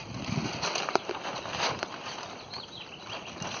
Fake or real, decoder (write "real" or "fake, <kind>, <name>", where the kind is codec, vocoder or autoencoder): real